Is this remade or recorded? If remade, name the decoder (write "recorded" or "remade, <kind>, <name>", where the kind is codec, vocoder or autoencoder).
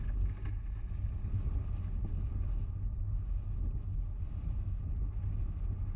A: recorded